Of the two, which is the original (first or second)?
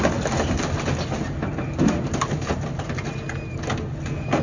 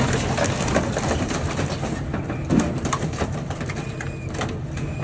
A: first